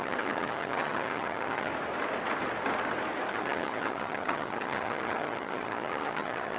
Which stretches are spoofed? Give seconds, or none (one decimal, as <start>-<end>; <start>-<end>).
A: 0.0-1.7; 3.3-6.6